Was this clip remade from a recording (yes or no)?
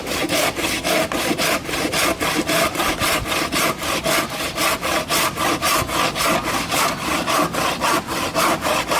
yes